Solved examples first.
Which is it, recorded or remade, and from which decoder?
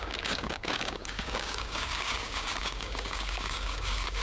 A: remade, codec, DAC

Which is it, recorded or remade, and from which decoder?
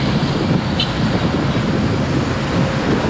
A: recorded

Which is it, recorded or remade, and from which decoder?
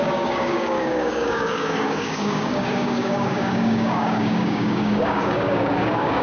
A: remade, codec, DAC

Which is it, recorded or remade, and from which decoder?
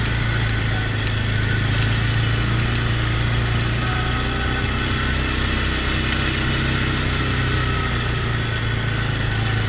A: recorded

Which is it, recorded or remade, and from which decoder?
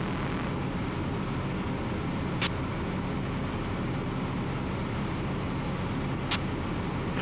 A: recorded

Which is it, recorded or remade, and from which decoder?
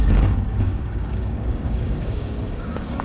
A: remade, codec, DAC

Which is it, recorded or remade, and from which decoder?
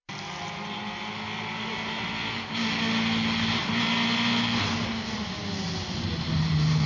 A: recorded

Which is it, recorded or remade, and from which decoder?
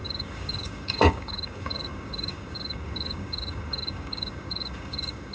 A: remade, codec, DAC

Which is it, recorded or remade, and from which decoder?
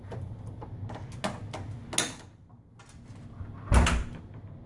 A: recorded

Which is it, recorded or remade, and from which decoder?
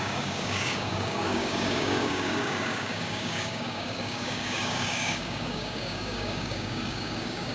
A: remade, codec, DAC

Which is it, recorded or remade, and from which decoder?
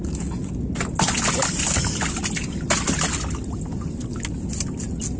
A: recorded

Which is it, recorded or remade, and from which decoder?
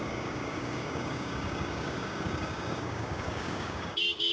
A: remade, codec, DAC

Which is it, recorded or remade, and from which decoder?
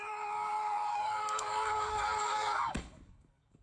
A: remade, codec, DAC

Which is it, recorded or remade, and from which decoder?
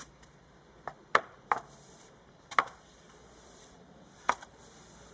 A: recorded